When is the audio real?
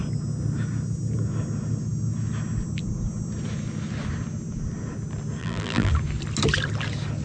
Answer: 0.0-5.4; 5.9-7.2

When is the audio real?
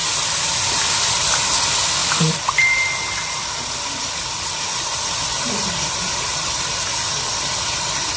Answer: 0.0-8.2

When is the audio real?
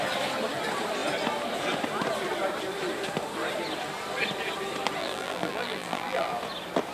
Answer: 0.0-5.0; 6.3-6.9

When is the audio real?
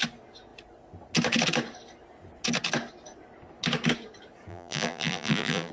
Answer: 0.0-4.5